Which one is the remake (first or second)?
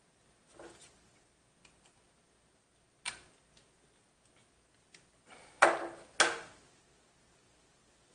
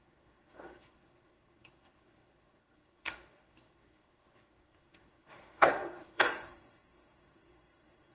second